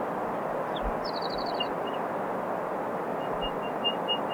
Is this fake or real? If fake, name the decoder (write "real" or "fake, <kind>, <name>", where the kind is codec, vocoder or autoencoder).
real